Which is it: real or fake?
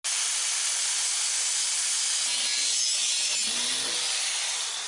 real